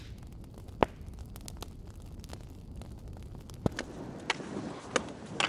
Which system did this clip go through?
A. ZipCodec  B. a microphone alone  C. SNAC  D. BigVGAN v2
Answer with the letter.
B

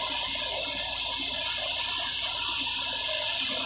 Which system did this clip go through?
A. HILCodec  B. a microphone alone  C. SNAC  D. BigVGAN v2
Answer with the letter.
D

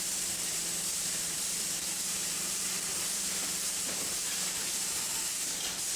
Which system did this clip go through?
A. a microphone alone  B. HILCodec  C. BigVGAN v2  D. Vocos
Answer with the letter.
C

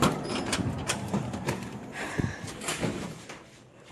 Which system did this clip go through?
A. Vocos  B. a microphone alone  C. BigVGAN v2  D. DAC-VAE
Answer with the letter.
C